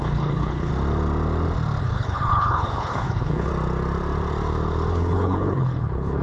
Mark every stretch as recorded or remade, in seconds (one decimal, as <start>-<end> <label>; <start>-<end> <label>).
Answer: 0.0-0.7 remade; 0.7-1.8 recorded; 1.8-3.5 remade; 3.5-4.9 recorded; 4.9-6.2 remade